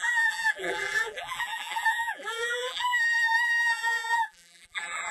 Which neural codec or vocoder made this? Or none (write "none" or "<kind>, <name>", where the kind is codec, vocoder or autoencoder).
vocoder, BigVGAN v2